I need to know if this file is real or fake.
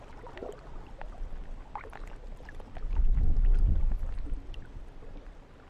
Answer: real